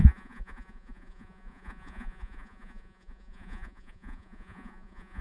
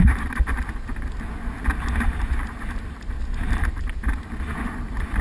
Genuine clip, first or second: second